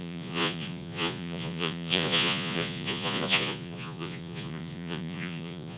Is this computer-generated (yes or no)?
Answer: yes